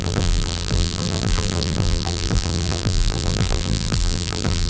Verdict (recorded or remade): remade